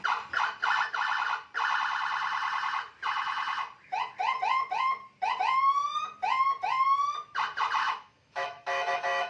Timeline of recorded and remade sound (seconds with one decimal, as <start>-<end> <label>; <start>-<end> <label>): 0.0-7.8 recorded; 7.8-9.3 remade